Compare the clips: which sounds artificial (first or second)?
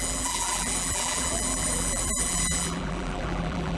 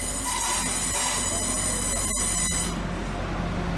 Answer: first